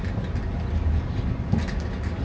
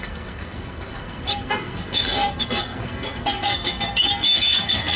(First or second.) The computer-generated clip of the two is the second